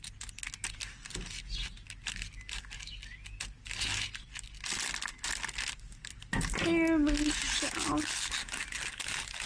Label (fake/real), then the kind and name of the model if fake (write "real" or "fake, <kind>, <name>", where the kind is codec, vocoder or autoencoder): real